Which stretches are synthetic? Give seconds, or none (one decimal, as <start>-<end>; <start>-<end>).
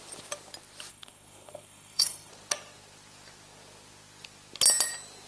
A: 0.9-2.3